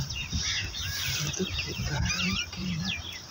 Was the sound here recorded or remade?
remade